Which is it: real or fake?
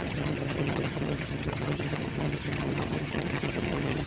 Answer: fake